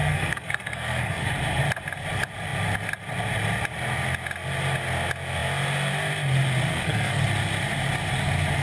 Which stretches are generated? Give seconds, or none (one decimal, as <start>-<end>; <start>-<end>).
0.0-1.3; 6.7-7.2